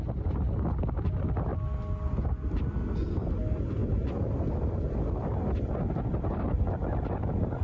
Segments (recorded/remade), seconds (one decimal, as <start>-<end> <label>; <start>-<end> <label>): 0.0-7.6 recorded